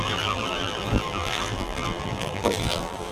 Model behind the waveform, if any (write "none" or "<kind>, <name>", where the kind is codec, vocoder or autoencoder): vocoder, BigVGAN v2